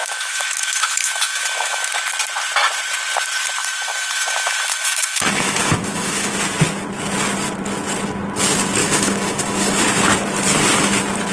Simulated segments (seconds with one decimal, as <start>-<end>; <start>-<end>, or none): 0.0-1.9; 3.6-6.3; 8.8-9.8